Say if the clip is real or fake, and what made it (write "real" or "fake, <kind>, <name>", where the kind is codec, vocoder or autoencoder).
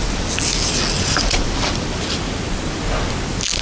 real